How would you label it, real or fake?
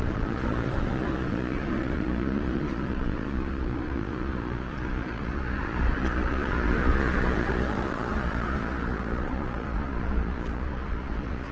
fake